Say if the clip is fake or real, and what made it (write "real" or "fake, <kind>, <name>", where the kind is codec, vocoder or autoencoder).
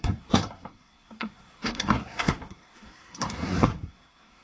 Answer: fake, codec, SNAC